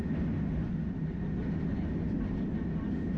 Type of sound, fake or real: real